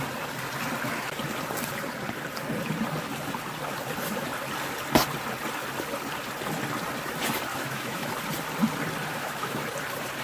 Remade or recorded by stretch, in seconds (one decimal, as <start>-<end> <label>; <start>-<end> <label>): 0.0-7.5 recorded; 7.5-8.1 remade; 8.1-9.1 recorded; 9.1-9.6 remade; 9.6-10.2 recorded